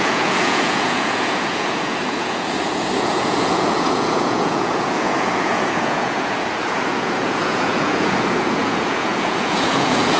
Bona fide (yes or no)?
no